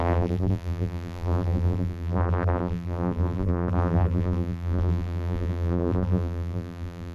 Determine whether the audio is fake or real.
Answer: fake